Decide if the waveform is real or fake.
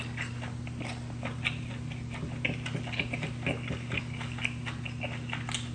real